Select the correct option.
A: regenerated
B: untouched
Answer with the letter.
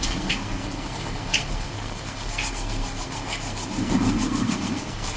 A